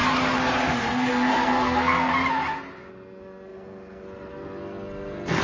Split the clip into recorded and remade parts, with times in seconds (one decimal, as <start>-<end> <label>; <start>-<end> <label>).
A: 0.0-1.1 recorded; 1.1-2.1 remade; 2.1-2.9 recorded; 2.9-5.4 remade